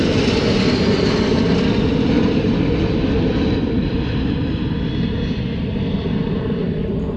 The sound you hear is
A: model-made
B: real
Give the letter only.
B